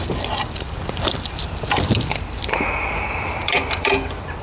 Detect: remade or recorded remade